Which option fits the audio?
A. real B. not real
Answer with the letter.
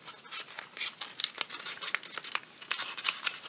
A